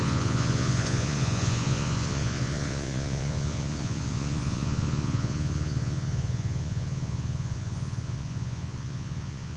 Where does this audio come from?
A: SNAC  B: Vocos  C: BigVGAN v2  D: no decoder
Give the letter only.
B